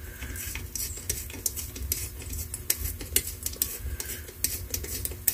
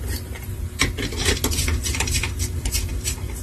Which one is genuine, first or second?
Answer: first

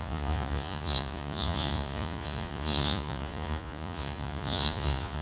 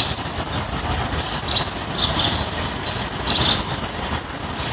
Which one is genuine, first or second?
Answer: second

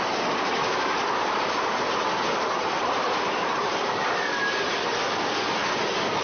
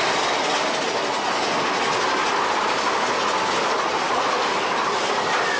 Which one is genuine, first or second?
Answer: second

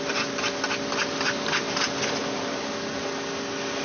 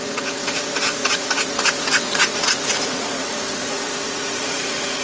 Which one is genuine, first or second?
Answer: first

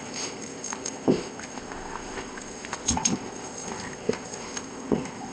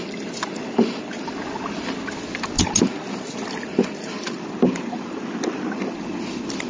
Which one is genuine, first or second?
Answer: second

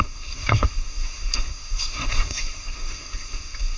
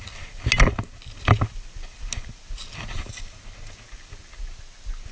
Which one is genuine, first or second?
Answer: second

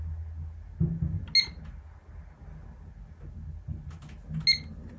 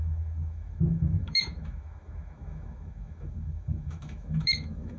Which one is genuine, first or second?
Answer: first